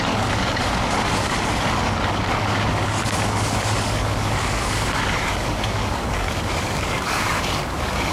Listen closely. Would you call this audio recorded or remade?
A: remade